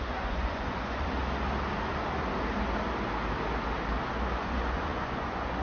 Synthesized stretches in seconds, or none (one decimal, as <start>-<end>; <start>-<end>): 0.0-1.2; 4.4-5.6